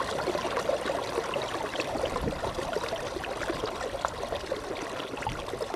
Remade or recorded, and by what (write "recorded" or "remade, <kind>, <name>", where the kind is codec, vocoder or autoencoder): recorded